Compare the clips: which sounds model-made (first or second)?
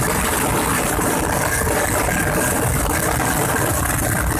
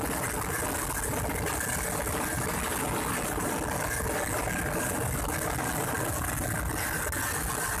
first